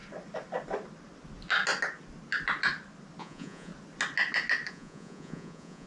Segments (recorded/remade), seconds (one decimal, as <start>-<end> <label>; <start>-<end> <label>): 0.0-3.2 recorded; 3.2-3.7 remade; 3.7-4.7 recorded; 4.7-5.9 remade